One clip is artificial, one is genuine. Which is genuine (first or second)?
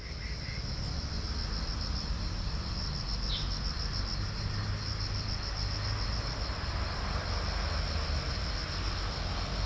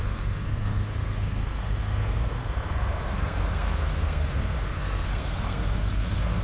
first